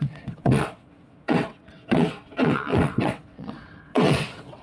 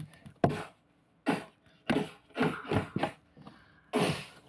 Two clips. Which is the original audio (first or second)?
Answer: second